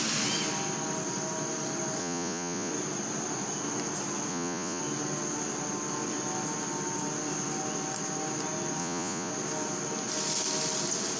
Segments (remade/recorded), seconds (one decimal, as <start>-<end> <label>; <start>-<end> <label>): 0.0-2.0 recorded; 2.0-2.7 remade; 2.7-4.3 recorded; 4.3-4.8 remade; 4.8-8.8 recorded; 8.8-9.3 remade; 9.3-11.2 recorded